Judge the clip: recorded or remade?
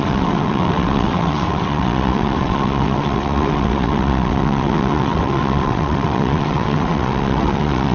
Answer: remade